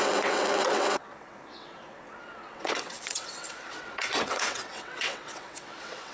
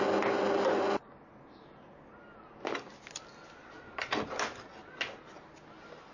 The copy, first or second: first